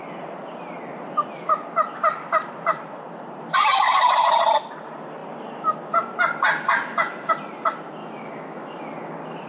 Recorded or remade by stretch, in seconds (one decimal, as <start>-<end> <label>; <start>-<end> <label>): 0.0-8.0 recorded; 8.0-8.8 remade; 8.8-9.5 recorded